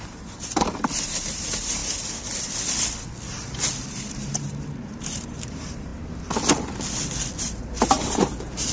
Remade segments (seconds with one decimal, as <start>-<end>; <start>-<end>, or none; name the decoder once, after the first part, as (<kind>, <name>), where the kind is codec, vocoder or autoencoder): 0.0-1.8 (vocoder, BigVGAN v2); 3.9-5.9; 7.4-8.7